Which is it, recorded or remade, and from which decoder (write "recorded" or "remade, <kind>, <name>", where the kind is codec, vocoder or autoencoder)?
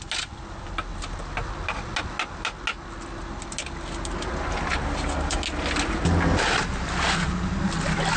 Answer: recorded